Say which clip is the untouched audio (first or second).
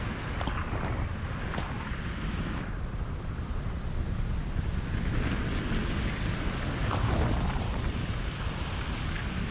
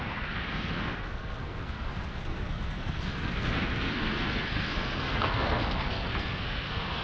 first